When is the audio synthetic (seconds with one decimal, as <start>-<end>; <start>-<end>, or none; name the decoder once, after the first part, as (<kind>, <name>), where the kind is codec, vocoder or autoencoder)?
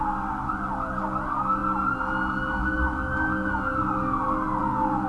none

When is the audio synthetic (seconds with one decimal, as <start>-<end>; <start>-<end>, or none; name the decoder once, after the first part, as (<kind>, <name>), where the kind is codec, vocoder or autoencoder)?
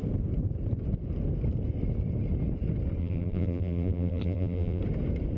3.0-4.8 (vocoder, BigVGAN v2)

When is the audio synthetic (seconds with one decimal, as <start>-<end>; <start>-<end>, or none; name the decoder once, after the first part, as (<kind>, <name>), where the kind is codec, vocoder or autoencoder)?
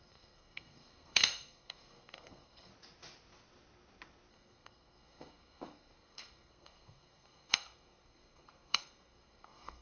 0.0-2.7 (codec, SNAC); 4.3-9.8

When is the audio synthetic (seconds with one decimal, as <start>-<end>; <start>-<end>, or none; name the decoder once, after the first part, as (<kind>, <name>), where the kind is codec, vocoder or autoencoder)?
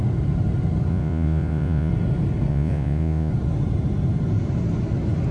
0.9-1.9 (vocoder, Vocos); 2.5-3.3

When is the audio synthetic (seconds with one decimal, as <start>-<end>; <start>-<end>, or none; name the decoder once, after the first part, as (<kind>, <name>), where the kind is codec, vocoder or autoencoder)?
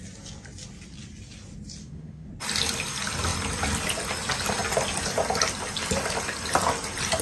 1.8-2.3 (autoencoder, DAC-VAE)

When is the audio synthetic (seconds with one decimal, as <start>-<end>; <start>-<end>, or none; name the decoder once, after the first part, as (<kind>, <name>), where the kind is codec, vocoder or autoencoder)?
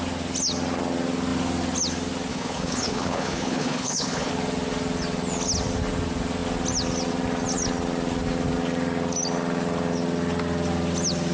2.3-4.3 (codec, HILCodec)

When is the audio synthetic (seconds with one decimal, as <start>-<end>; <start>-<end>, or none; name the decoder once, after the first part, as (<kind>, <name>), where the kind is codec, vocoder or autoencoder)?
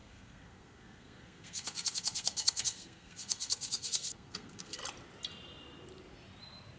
0.0-4.8 (codec, SNAC)